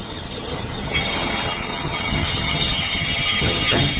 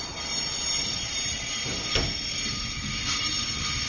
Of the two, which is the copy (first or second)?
first